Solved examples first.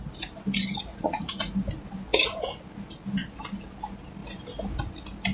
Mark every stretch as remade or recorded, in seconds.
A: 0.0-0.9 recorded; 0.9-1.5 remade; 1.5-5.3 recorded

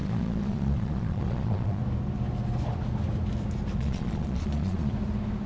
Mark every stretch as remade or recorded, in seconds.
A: 0.0-1.8 remade; 1.8-3.8 recorded; 3.8-4.9 remade; 4.9-5.5 recorded

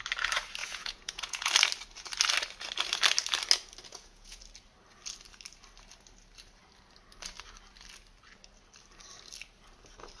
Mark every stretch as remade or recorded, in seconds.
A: 0.0-0.6 recorded; 0.6-1.5 remade; 1.5-3.9 recorded; 3.9-4.4 remade; 4.4-10.2 recorded

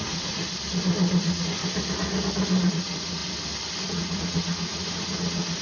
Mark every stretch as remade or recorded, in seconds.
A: 0.0-0.4 remade; 0.4-1.2 recorded; 1.2-1.6 remade; 1.6-2.7 recorded; 2.7-3.2 remade; 3.2-3.9 recorded; 3.9-5.6 remade

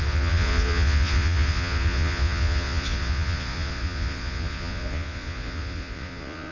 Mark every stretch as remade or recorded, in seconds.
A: 0.0-6.5 remade

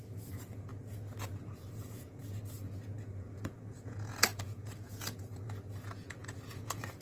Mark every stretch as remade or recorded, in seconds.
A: 0.0-0.7 remade; 0.7-1.7 recorded; 1.7-2.2 remade; 2.2-3.0 recorded; 3.0-7.0 remade